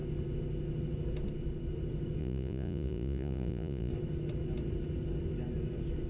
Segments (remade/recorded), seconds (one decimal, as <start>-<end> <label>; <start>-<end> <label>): 0.0-2.2 recorded; 2.2-3.9 remade; 3.9-6.1 recorded